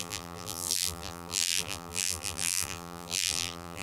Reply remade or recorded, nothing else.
remade